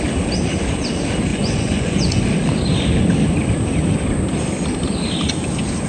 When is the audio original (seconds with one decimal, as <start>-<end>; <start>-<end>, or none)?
0.0-1.3; 2.2-5.9